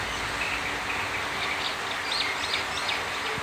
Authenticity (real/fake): real